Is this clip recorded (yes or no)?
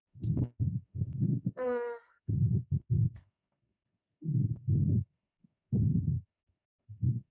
no